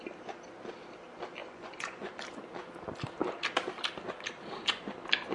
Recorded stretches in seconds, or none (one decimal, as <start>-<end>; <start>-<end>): 0.0-1.4; 2.1-5.3